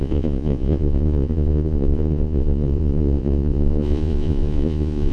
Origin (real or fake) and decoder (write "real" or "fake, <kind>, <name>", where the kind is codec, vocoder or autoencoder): fake, vocoder, Vocos